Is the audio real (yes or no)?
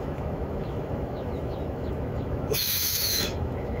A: no